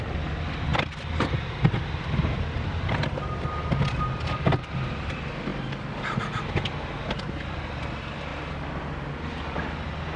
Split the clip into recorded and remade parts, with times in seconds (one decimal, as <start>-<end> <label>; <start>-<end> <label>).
0.0-10.2 recorded